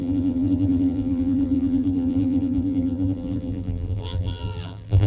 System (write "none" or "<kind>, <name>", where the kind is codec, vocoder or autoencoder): vocoder, BigVGAN v2